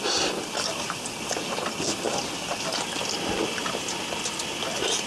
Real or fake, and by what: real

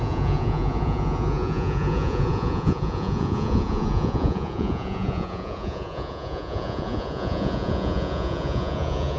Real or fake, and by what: fake, vocoder, Vocos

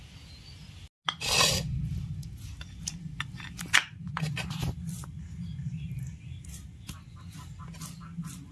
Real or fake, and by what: real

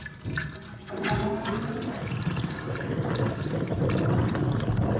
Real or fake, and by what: real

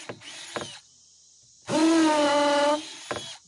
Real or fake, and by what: real